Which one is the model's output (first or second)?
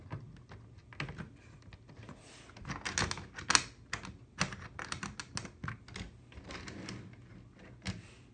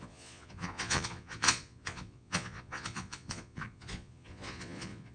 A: second